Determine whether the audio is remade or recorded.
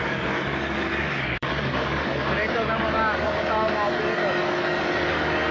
remade